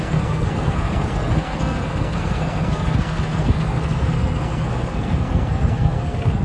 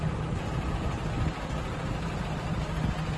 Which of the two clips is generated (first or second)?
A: first